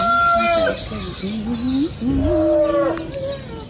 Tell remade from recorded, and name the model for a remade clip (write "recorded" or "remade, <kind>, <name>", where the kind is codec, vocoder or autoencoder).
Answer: recorded